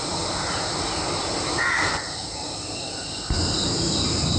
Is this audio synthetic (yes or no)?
no